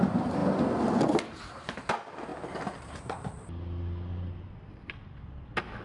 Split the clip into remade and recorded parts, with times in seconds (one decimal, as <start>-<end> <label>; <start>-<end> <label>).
0.0-5.8 recorded